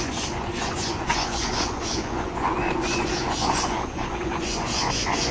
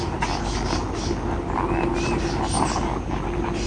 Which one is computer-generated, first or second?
first